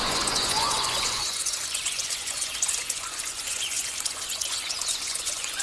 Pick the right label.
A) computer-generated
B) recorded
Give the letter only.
A